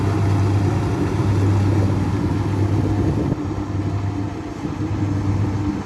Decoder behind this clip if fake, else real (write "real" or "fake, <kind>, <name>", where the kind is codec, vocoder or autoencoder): real